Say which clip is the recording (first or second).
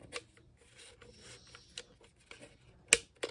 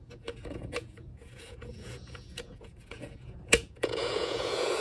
first